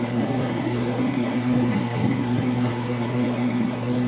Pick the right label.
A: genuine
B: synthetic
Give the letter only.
B